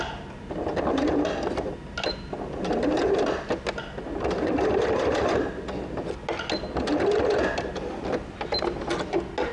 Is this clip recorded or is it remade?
recorded